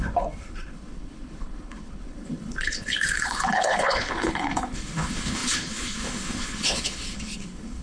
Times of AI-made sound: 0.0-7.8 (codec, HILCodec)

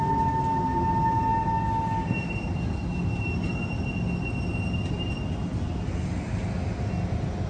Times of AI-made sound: none

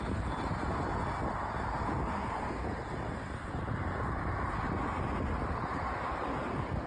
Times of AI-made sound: none